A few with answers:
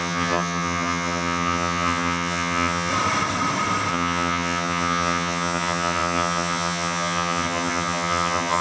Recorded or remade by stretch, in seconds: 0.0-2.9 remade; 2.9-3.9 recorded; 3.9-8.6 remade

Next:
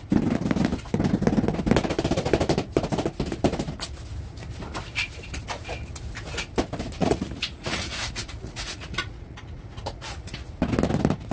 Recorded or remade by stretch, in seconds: 0.0-7.0 recorded; 7.0-10.5 remade; 10.5-11.3 recorded

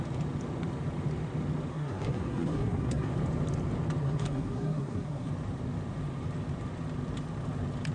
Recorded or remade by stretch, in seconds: 0.0-1.7 recorded; 1.7-3.1 remade; 3.1-4.0 recorded; 4.0-5.3 remade; 5.3-7.9 recorded

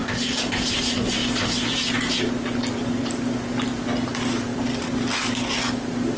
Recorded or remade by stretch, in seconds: 0.0-6.2 recorded

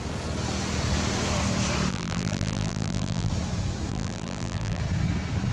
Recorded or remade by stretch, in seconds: 0.0-1.9 recorded; 1.9-3.3 remade; 3.3-3.9 recorded; 3.9-4.8 remade; 4.8-5.5 recorded

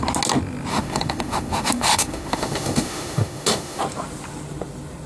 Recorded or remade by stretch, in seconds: 0.0-0.7 recorded; 0.7-3.8 remade; 3.8-5.1 recorded